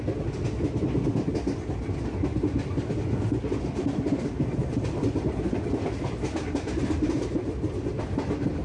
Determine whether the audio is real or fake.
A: real